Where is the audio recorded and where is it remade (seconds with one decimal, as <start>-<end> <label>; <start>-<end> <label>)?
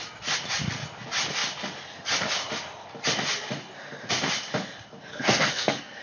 0.0-5.1 recorded; 5.1-6.0 remade